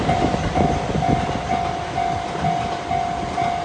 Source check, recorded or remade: recorded